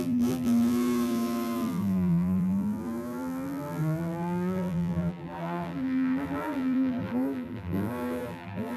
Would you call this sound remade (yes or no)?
yes